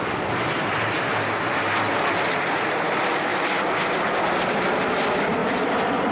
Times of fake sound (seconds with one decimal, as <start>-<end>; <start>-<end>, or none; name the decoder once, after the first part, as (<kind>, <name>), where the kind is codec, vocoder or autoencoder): none